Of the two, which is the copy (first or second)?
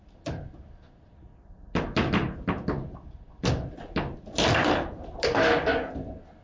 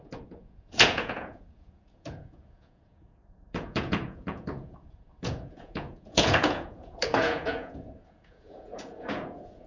second